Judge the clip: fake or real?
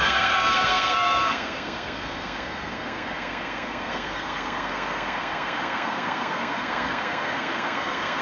fake